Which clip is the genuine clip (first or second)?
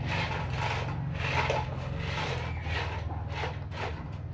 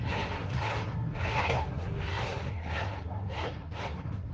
first